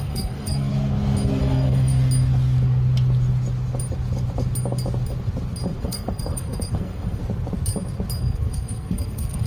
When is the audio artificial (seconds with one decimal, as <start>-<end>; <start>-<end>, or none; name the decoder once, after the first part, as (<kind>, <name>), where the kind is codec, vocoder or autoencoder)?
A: 0.0-0.7 (codec, SNAC); 1.4-1.9; 5.8-7.2; 8.2-9.5

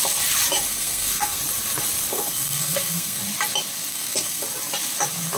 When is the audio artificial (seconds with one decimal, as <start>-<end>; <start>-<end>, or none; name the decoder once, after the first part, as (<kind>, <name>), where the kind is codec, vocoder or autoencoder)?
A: 0.7-1.4 (codec, SNAC); 2.1-3.2; 3.9-4.4